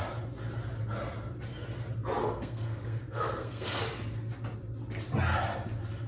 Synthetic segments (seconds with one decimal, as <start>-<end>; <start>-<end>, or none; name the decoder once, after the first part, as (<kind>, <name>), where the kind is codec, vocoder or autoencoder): 2.2-3.8 (codec, SNAC)